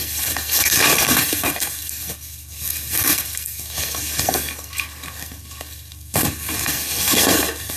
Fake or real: fake